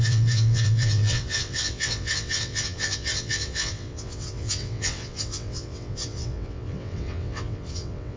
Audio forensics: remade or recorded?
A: remade